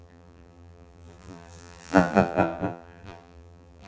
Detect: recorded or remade remade